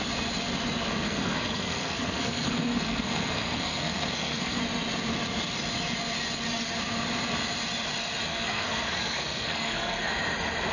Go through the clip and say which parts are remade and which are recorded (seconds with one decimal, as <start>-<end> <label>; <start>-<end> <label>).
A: 0.0-0.9 recorded; 0.9-4.6 remade; 4.6-8.3 recorded; 8.3-10.1 remade; 10.1-10.7 recorded